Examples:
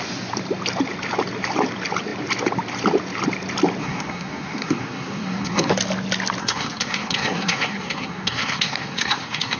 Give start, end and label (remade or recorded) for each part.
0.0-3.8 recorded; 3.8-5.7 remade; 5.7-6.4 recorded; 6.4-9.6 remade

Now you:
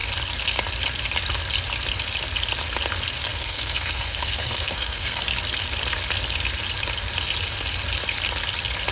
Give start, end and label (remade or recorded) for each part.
0.0-3.3 recorded; 3.3-5.2 remade; 5.2-8.9 recorded

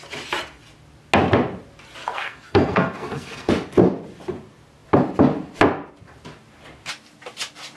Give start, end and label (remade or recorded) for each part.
0.0-2.0 recorded; 2.0-3.5 remade; 3.5-7.8 recorded

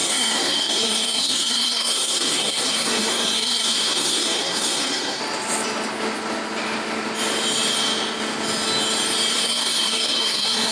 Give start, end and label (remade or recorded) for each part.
0.0-5.2 remade; 5.2-9.3 recorded; 9.3-10.7 remade

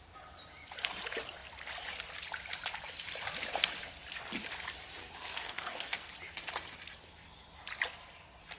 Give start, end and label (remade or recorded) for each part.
0.0-5.0 recorded; 5.0-6.1 remade; 6.1-8.6 recorded

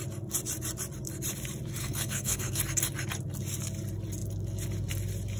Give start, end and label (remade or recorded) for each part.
0.0-1.8 recorded; 1.8-2.6 remade; 2.6-5.4 recorded